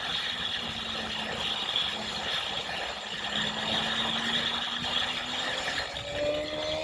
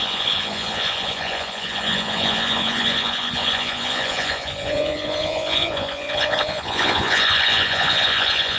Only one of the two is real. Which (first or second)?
first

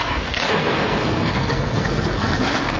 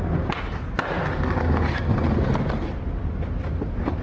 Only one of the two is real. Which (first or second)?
second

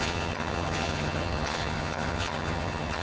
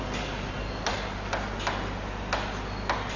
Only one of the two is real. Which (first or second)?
second